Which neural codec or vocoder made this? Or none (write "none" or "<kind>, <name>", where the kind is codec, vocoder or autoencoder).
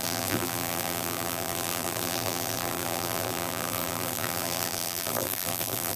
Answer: vocoder, BigVGAN v2